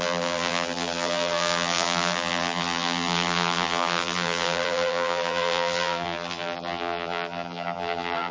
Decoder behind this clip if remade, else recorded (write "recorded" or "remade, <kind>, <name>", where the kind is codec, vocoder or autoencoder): remade, vocoder, BigVGAN v2